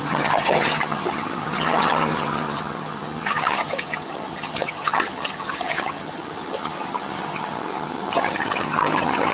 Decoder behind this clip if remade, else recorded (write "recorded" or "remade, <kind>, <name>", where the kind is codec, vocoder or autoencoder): remade, vocoder, HiFi-GAN